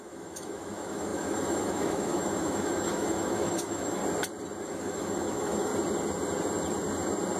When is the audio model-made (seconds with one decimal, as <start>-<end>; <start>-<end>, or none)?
0.0-4.0; 4.6-5.7